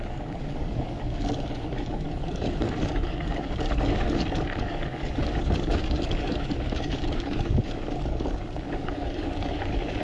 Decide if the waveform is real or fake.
fake